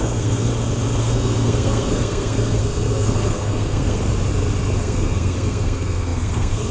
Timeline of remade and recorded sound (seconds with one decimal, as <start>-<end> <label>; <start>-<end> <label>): 0.0-0.5 remade; 0.5-1.0 recorded; 1.0-4.0 remade; 4.0-4.8 recorded; 4.8-6.7 remade